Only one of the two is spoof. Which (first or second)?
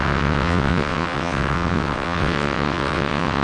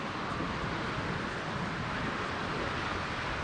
first